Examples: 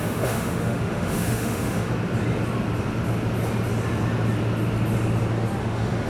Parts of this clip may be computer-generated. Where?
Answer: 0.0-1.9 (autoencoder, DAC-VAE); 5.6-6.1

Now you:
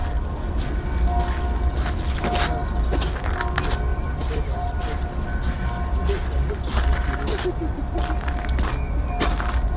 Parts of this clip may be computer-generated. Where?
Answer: 3.9-4.8 (vocoder, BigVGAN v2)

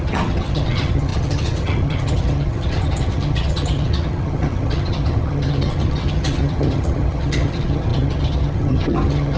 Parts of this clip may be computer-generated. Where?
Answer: 0.0-9.4 (vocoder, HiFi-GAN)

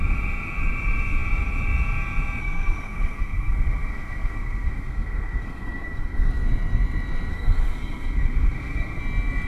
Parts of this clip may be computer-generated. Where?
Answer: 2.4-6.3 (codec, SNAC); 7.3-9.0